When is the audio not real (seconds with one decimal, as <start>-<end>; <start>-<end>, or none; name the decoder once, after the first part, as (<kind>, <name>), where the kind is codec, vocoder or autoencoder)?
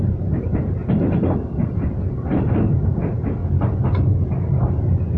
0.0-0.8 (vocoder, BigVGAN v2); 1.5-3.4; 4.3-5.2